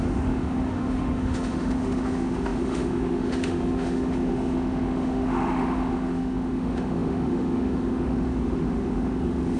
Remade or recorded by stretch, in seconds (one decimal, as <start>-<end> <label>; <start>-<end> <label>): 0.0-9.6 remade